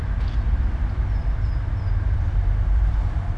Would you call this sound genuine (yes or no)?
yes